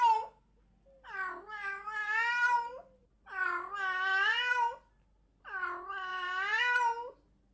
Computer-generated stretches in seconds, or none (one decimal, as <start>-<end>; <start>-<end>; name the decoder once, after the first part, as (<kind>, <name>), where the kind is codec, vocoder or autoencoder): none